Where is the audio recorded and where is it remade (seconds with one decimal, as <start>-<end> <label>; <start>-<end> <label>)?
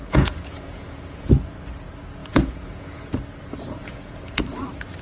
0.0-1.3 remade; 1.3-2.2 recorded; 2.2-3.1 remade; 3.1-3.8 recorded; 3.8-4.4 remade; 4.4-5.0 recorded